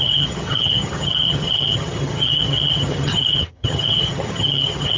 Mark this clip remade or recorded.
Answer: remade